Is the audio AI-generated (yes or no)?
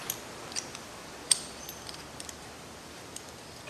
yes